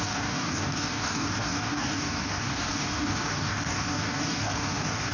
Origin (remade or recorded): remade